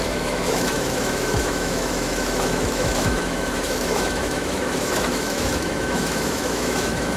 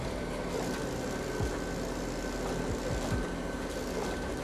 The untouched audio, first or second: second